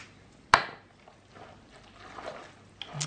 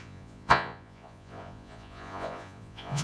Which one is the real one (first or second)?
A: first